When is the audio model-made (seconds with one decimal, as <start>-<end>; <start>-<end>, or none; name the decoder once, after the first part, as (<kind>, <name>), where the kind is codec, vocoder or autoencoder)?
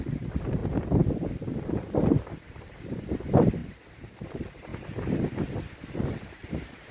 0.0-0.6 (vocoder, BigVGAN v2); 1.6-3.6; 4.3-4.7; 5.4-6.9